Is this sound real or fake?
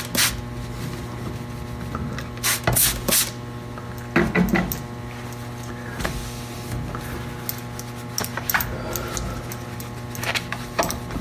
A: real